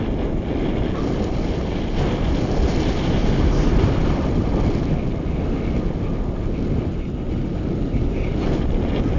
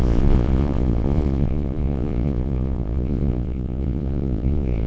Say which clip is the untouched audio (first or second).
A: first